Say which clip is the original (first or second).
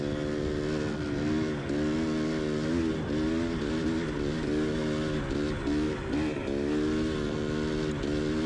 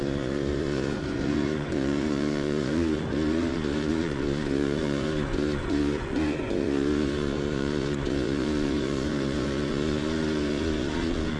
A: first